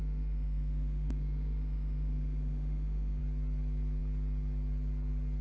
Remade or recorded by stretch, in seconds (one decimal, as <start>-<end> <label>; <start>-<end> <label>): 0.0-3.2 remade; 3.2-5.4 recorded